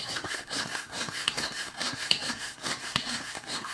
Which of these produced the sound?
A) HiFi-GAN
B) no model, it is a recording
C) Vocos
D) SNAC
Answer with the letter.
D